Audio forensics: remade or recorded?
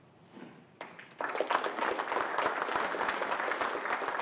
recorded